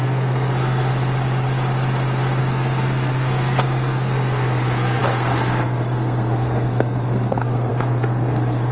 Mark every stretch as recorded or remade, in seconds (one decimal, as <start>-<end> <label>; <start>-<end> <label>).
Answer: 0.0-0.9 remade; 0.9-2.4 recorded; 2.4-8.7 remade